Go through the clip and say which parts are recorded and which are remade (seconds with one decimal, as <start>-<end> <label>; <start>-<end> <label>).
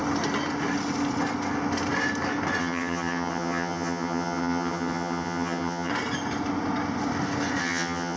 0.0-2.6 recorded; 2.6-5.9 remade; 5.9-7.6 recorded; 7.6-8.2 remade